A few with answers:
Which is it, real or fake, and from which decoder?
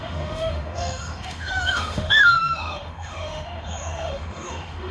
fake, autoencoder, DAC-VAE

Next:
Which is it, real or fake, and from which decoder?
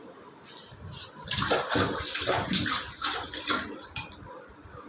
real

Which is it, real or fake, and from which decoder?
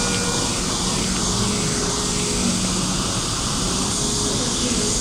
real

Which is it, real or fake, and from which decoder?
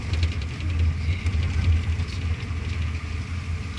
real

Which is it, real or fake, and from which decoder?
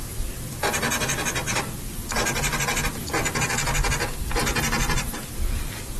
real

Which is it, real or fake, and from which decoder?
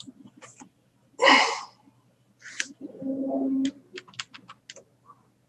real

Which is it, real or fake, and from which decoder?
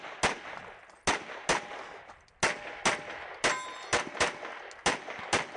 real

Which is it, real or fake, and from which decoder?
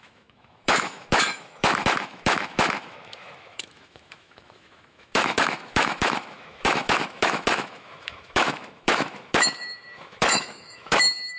fake, autoencoder, DAC-VAE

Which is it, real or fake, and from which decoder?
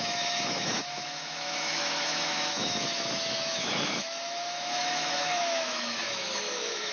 fake, autoencoder, DAC-VAE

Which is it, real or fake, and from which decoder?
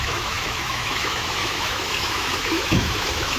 fake, autoencoder, DAC-VAE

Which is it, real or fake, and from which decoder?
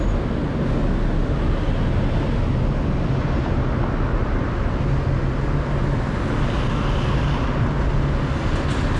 real